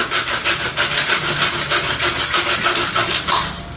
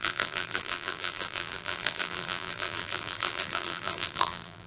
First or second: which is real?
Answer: first